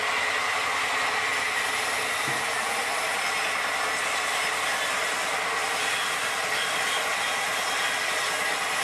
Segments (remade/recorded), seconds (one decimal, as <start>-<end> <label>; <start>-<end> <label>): 0.0-8.8 recorded